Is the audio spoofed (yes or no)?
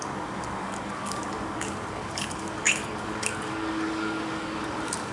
yes